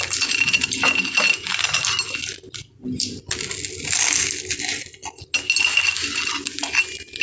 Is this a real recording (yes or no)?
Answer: yes